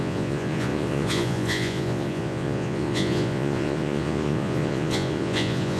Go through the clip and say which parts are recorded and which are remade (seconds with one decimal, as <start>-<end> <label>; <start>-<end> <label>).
0.0-5.8 remade